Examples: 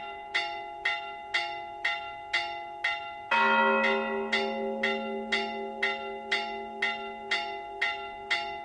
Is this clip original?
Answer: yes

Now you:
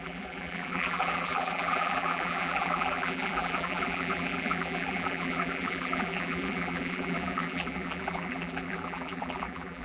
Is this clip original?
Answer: no